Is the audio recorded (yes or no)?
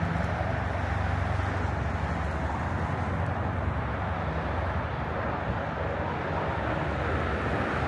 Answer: yes